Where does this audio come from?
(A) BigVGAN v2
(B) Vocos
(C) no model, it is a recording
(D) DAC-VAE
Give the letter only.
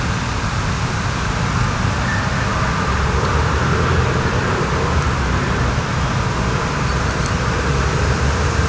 A